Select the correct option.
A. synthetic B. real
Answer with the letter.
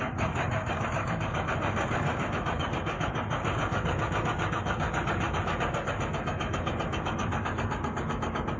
A